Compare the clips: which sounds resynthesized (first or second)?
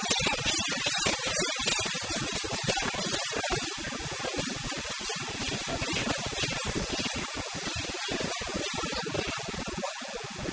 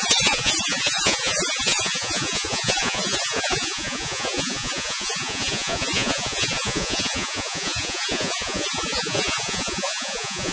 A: second